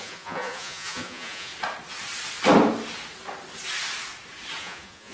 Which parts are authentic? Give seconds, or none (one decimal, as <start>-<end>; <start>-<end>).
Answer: 1.5-4.6